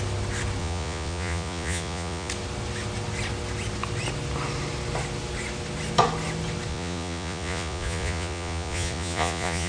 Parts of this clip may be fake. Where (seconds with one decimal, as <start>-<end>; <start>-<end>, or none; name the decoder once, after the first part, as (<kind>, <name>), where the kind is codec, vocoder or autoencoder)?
0.6-2.3 (vocoder, Vocos); 6.7-9.7